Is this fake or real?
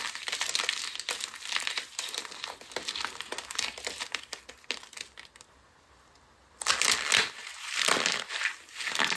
real